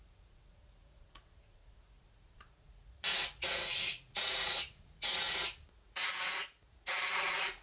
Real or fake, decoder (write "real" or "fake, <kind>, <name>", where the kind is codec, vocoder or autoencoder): fake, vocoder, Vocos